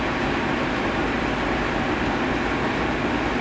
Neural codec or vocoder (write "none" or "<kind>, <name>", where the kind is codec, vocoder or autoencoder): none